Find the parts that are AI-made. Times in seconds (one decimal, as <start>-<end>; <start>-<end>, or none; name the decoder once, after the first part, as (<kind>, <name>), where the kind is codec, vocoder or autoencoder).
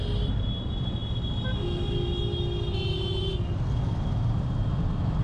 none